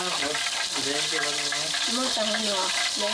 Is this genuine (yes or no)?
yes